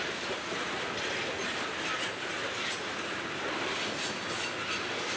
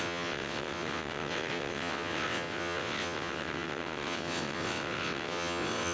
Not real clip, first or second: second